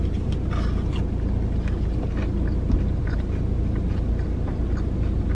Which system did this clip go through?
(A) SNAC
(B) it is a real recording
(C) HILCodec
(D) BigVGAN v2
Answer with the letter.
B